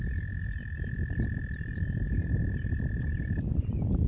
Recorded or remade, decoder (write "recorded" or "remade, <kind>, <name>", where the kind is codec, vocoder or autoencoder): recorded